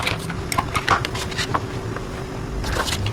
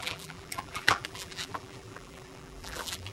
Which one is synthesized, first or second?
second